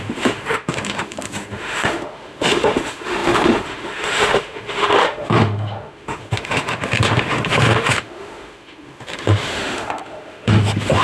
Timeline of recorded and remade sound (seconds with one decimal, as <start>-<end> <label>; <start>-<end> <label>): 0.0-11.0 remade